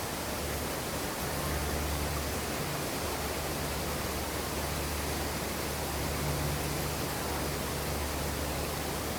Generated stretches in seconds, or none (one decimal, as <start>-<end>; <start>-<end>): none